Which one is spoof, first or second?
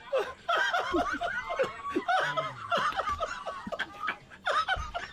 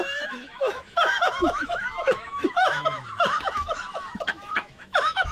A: second